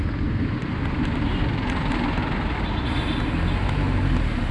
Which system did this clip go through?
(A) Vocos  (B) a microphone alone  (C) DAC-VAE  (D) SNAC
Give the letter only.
B